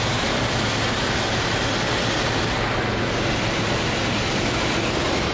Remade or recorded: recorded